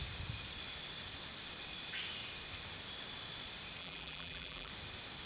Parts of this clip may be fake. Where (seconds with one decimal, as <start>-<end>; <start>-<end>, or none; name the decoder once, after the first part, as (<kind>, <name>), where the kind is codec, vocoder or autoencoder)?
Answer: 3.8-4.7 (vocoder, BigVGAN v2)